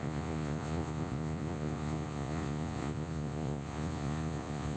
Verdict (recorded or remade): remade